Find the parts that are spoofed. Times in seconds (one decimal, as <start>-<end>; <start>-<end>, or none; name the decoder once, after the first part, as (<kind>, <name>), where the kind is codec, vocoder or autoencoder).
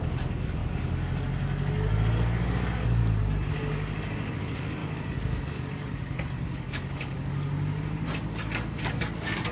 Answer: 0.0-3.0 (codec, DAC); 3.5-9.5